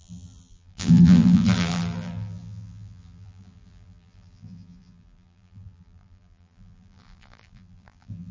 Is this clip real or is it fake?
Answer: fake